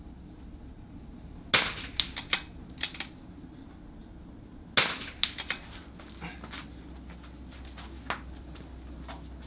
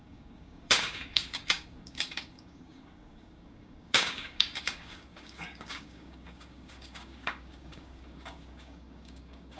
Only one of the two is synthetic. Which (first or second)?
second